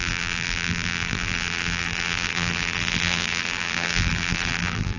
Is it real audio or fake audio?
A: fake